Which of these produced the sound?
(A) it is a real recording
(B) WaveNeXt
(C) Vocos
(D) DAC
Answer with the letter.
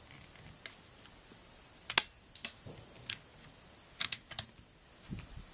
A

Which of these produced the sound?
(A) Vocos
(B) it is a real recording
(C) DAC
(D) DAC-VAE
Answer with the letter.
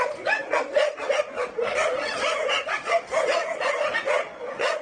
A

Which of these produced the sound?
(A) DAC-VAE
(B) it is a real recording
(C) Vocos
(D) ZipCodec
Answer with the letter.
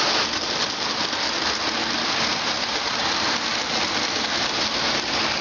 B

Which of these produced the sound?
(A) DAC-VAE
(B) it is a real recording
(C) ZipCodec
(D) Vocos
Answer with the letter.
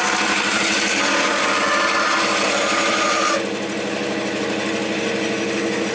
B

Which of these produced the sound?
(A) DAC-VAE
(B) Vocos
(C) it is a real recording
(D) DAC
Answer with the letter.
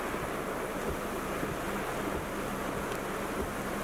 C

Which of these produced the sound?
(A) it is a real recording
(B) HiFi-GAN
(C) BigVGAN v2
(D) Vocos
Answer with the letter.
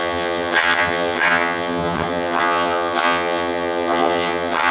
B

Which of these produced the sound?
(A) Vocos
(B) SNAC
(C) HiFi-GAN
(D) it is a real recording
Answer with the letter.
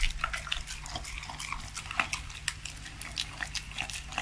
D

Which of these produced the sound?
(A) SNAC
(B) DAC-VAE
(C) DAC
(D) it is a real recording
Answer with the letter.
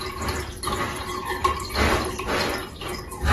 D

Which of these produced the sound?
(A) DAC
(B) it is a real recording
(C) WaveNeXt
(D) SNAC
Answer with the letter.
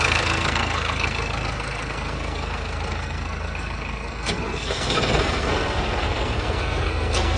D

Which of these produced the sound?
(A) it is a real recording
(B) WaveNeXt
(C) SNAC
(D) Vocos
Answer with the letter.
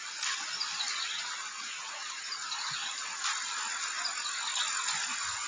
A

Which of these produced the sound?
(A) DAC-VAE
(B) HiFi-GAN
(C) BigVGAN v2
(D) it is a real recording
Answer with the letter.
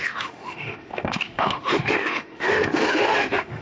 A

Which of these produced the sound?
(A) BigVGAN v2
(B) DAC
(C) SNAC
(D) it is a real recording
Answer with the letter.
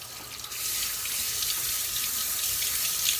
D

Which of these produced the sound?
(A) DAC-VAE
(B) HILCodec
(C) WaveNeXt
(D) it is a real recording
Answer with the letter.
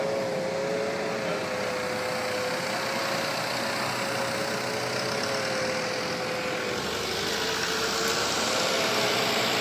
D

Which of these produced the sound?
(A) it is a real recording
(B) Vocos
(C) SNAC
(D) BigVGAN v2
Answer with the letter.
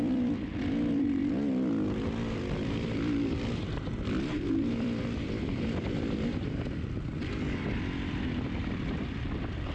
D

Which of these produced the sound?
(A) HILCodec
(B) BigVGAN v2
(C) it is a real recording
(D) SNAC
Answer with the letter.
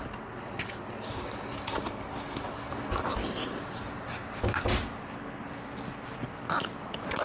C